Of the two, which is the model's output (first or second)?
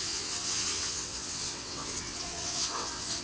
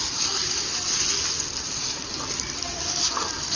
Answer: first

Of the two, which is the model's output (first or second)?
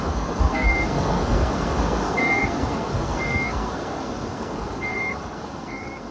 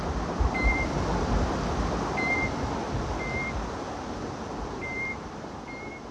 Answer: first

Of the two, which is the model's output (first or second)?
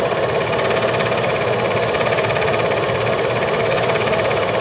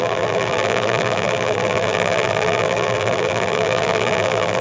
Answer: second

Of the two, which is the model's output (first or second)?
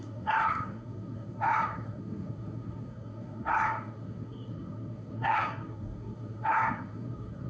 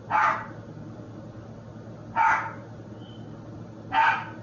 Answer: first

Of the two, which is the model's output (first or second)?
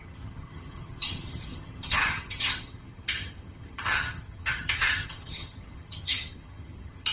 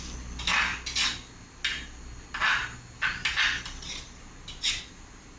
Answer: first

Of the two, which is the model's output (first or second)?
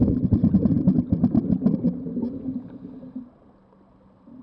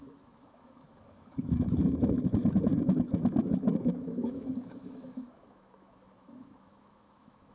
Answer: second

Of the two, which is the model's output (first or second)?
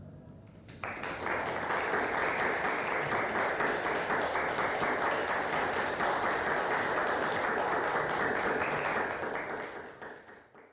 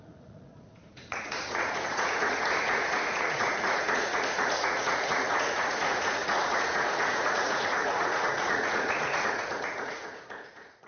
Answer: second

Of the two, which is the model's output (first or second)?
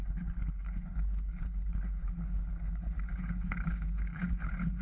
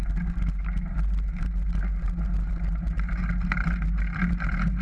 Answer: first